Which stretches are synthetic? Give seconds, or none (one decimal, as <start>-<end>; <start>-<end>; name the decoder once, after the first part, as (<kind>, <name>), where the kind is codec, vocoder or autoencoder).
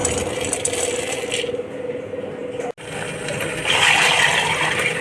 none